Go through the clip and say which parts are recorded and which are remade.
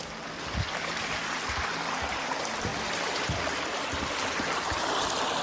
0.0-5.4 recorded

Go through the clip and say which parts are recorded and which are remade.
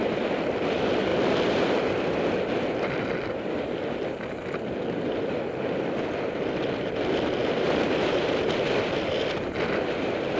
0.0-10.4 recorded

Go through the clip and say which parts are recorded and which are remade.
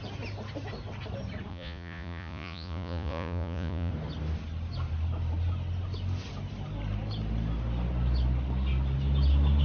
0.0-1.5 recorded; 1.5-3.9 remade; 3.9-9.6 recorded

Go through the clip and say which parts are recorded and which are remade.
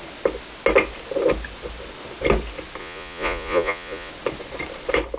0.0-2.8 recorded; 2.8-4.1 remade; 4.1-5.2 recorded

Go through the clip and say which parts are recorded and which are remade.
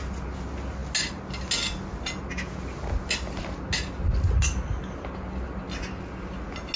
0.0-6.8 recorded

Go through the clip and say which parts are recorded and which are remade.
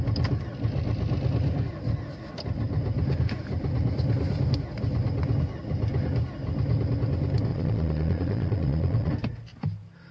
0.0-7.5 recorded; 7.5-9.1 remade; 9.1-10.1 recorded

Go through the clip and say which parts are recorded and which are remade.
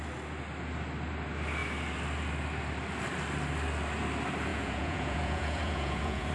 0.0-4.5 recorded; 4.5-6.3 remade